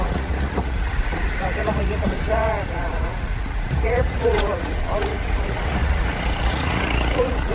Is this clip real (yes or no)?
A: no